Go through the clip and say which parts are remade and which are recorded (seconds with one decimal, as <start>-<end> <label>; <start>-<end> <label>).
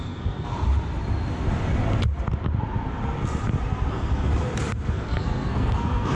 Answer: 0.0-0.5 remade; 0.5-3.9 recorded; 3.9-4.3 remade; 4.3-4.9 recorded; 4.9-6.1 remade